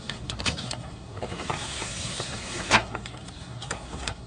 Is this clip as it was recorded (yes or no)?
no